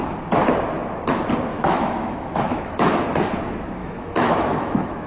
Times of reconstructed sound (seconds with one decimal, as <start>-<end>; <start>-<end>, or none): 1.5-3.0; 3.8-5.1